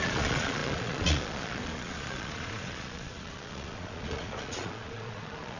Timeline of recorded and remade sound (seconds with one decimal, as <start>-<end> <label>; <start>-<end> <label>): 0.0-5.6 remade